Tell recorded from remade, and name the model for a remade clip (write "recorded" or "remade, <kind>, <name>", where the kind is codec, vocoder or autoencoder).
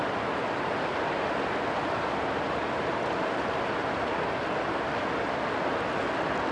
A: recorded